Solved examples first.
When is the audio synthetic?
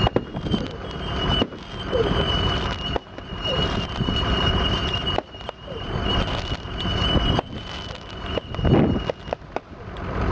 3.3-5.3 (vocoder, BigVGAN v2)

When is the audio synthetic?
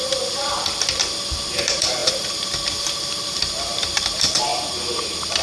1.6-4.5 (vocoder, BigVGAN v2)